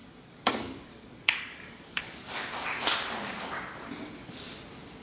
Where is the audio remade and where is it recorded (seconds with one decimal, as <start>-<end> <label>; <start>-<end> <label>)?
0.0-2.4 remade; 2.4-5.0 recorded